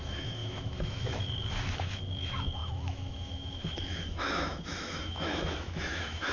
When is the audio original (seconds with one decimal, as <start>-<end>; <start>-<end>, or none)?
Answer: none